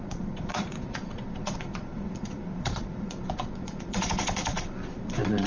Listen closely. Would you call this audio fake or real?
fake